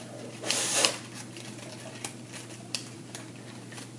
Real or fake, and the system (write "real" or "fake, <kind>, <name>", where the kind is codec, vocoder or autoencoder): fake, vocoder, BigVGAN v2